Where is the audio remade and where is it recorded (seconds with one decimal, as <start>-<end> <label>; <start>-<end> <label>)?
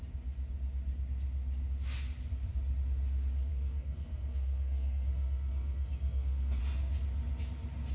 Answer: 0.0-3.5 recorded; 3.5-6.6 remade; 6.6-7.9 recorded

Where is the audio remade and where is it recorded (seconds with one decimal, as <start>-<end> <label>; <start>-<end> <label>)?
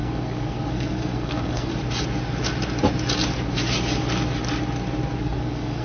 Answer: 0.0-1.7 remade; 1.7-5.2 recorded; 5.2-5.8 remade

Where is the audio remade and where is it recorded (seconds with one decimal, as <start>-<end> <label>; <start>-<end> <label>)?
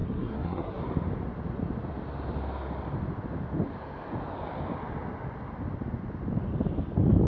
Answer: 0.0-0.8 remade; 0.8-7.3 recorded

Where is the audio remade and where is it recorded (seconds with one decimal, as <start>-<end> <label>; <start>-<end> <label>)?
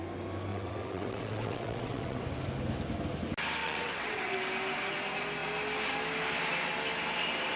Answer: 0.0-0.5 recorded; 0.5-2.2 remade; 2.2-3.6 recorded; 3.6-4.3 remade; 4.3-7.6 recorded